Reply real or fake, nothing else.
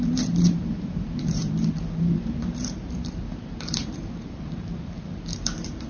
fake